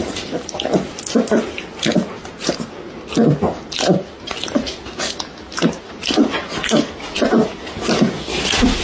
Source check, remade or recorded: recorded